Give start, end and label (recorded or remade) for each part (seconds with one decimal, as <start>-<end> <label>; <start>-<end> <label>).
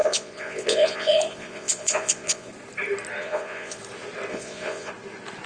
0.0-2.5 remade; 2.5-3.2 recorded; 3.2-3.8 remade; 3.8-4.3 recorded; 4.3-4.9 remade; 4.9-5.5 recorded